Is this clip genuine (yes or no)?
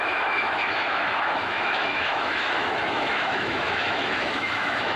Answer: no